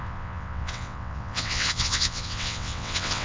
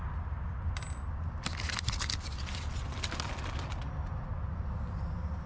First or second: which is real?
second